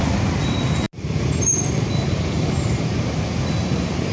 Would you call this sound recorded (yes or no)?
yes